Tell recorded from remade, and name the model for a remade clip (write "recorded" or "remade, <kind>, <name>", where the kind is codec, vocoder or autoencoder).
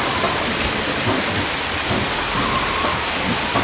recorded